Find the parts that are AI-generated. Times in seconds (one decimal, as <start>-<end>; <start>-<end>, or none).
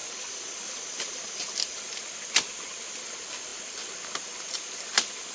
none